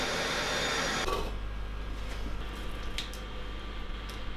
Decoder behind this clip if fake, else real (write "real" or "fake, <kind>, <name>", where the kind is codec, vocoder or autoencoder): real